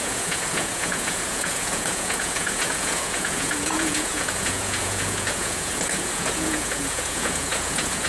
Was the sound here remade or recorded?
remade